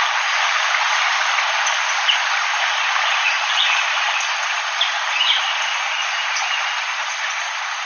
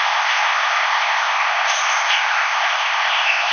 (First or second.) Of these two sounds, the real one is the first